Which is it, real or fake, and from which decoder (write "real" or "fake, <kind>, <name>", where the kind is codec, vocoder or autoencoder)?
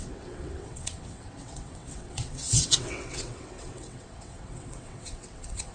fake, vocoder, WaveNeXt